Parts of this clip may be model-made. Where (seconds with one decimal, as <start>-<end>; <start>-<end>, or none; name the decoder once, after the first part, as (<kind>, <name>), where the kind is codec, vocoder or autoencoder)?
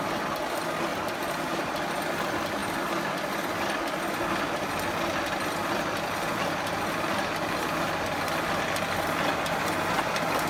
0.9-1.6 (vocoder, BigVGAN v2); 5.6-6.9